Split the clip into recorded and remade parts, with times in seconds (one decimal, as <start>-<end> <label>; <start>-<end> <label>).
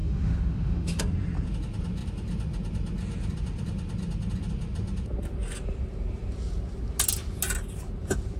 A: 0.0-1.0 remade; 1.0-8.4 recorded